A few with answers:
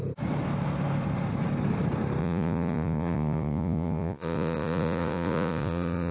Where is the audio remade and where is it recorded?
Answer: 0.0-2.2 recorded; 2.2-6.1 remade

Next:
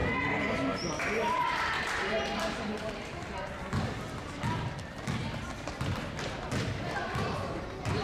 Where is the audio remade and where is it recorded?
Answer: 0.0-0.9 recorded; 0.9-8.0 remade

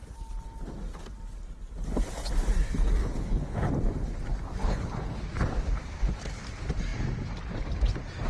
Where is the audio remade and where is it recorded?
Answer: 0.0-3.0 recorded; 3.0-3.7 remade; 3.7-4.6 recorded; 4.6-5.2 remade; 5.2-8.3 recorded

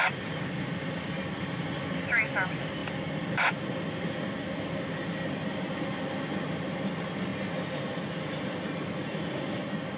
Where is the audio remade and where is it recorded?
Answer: 0.0-10.0 recorded